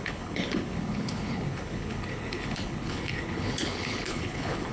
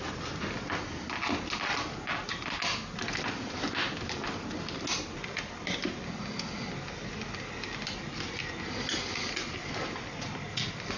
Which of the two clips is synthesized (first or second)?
first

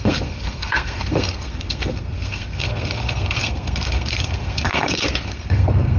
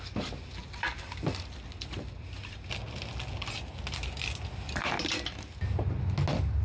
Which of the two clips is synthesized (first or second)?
first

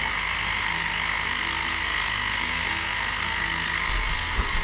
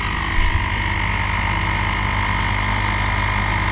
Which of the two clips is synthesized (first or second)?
first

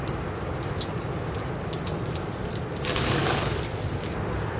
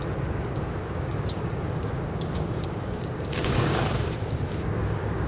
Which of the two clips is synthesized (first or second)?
second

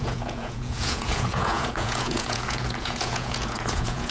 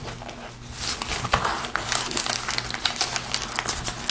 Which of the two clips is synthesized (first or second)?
first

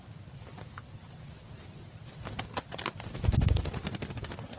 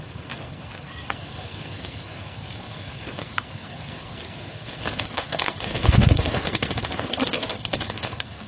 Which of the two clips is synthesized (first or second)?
second